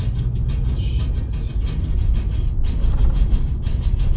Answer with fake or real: real